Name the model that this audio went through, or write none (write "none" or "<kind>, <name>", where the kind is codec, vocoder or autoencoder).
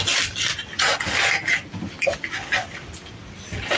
none